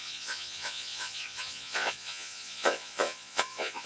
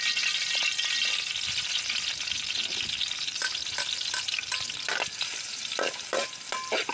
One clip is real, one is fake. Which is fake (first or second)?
first